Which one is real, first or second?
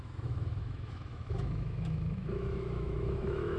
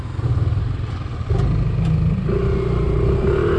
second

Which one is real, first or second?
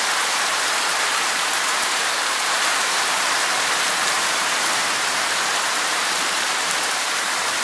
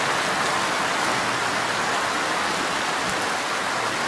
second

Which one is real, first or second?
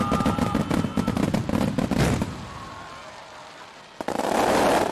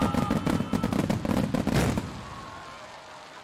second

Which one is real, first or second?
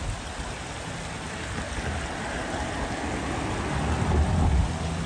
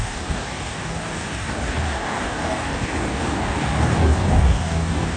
first